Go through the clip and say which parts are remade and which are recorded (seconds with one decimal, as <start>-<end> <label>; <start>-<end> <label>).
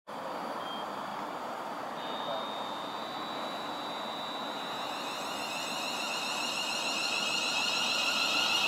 0.0-8.7 recorded